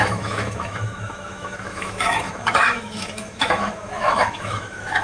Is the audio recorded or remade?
remade